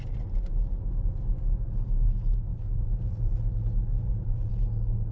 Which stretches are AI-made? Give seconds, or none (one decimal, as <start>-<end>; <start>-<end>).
2.5-3.3; 3.9-4.5